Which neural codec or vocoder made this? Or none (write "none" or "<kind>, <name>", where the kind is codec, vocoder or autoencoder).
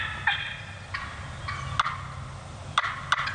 none